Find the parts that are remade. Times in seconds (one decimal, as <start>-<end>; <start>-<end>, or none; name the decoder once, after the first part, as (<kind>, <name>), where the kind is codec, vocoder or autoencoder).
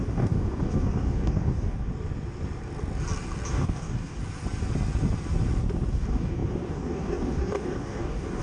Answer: 0.0-1.9 (codec, DAC); 3.5-4.2; 5.9-8.4